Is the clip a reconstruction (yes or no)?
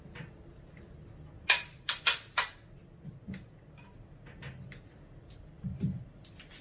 no